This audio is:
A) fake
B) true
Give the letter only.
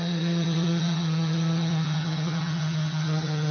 A